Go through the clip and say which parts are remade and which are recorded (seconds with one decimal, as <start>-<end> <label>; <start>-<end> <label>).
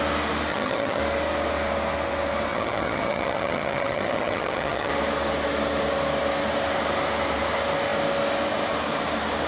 0.0-0.5 recorded; 0.5-1.0 remade; 1.0-2.5 recorded; 2.5-4.9 remade; 4.9-9.5 recorded